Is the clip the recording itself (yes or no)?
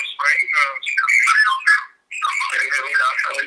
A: yes